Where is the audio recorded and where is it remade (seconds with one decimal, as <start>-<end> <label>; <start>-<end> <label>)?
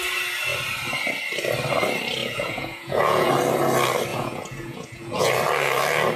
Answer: 0.0-2.2 recorded; 2.2-3.3 remade; 3.3-4.1 recorded; 4.1-5.3 remade; 5.3-6.2 recorded